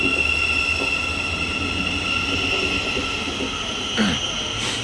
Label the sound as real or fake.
real